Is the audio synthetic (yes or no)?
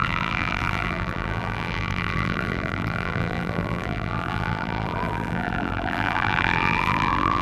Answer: yes